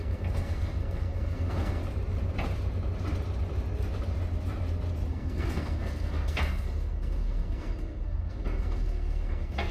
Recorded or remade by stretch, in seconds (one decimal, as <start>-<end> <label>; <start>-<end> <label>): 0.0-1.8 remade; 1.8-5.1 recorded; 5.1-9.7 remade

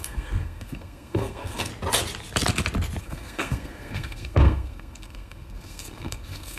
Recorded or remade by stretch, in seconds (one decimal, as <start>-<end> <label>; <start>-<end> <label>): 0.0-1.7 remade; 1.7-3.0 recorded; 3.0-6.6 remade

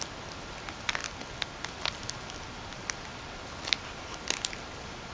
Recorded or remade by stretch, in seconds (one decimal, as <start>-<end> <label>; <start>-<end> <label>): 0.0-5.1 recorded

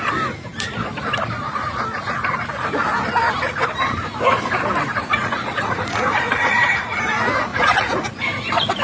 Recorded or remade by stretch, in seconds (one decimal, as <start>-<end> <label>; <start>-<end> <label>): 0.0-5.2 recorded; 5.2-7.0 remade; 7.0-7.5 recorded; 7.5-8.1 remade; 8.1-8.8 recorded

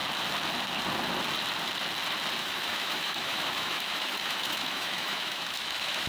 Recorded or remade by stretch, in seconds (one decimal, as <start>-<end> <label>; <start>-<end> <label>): 0.0-2.4 recorded; 2.4-6.1 remade